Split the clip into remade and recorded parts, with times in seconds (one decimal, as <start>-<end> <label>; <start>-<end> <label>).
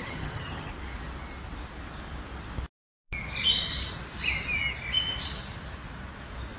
0.0-0.7 remade; 0.7-6.6 recorded